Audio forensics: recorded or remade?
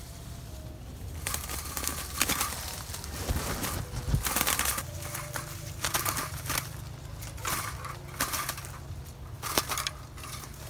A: recorded